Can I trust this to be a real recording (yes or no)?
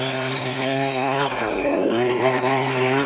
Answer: no